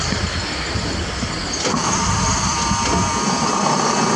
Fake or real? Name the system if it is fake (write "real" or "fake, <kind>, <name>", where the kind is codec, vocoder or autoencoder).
real